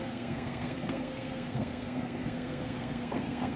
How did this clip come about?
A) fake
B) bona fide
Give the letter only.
A